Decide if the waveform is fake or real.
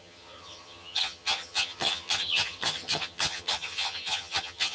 fake